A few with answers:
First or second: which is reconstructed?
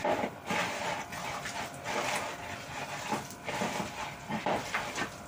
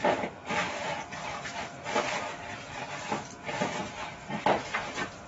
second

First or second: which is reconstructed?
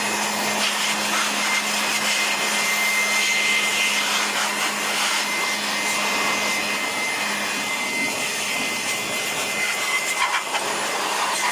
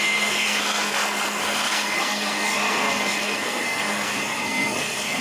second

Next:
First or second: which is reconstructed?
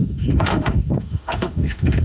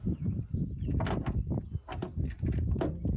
first